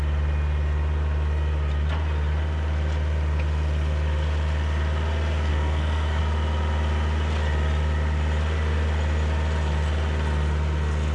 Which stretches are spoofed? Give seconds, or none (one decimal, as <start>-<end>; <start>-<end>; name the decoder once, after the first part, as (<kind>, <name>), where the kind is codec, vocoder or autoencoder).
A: 5.5-6.2 (codec, SNAC)